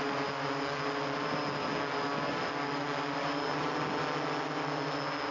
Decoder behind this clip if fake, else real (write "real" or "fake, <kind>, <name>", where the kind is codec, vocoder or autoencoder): real